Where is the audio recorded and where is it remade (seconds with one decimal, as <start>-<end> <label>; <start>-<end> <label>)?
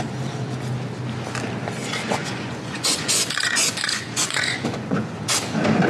0.0-1.8 recorded; 1.8-5.2 remade; 5.2-5.9 recorded